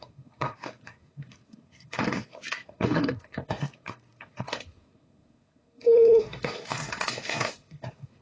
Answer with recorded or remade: remade